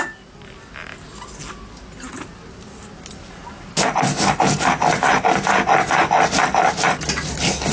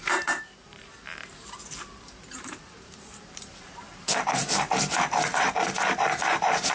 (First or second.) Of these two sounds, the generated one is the second